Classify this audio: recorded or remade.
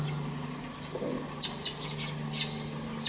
recorded